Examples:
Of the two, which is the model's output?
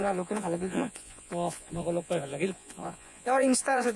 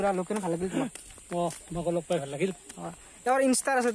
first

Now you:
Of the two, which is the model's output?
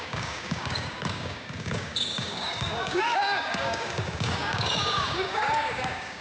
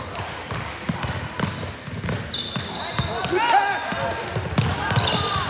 first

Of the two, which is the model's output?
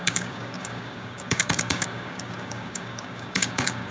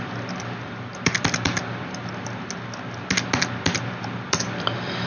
first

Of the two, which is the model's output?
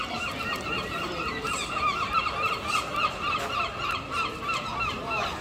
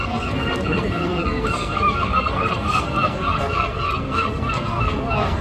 second